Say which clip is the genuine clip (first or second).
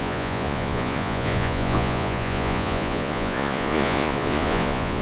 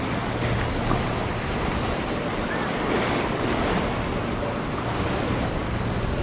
second